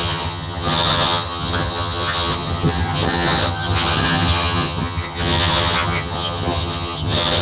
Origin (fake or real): fake